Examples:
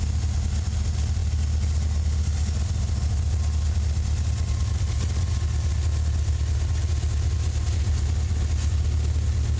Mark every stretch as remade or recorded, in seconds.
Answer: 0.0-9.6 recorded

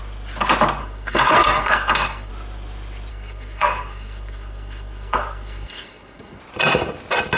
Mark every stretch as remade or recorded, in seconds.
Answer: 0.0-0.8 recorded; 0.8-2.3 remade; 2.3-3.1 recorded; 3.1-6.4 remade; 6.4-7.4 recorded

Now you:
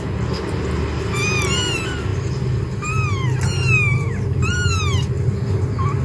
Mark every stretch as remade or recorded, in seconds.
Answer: 0.0-6.0 recorded

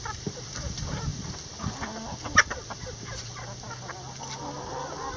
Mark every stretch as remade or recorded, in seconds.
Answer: 0.0-1.1 remade; 1.1-4.2 recorded; 4.2-5.2 remade

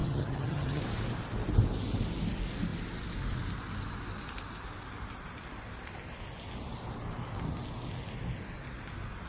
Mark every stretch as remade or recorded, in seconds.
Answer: 0.0-0.8 remade; 0.8-9.3 recorded

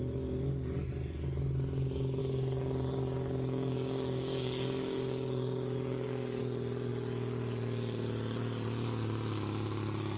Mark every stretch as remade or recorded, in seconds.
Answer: 0.0-2.2 recorded; 2.2-6.4 remade; 6.4-10.2 recorded